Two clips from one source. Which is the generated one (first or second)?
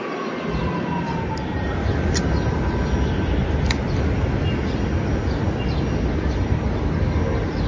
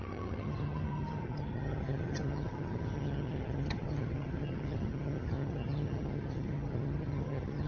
second